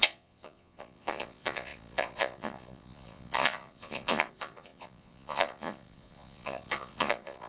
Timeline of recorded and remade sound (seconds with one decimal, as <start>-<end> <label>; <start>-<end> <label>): 0.0-7.5 remade